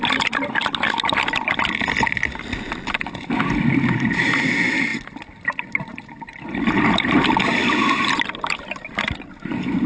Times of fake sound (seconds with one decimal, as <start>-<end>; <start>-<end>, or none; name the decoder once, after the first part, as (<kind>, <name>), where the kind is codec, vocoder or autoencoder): none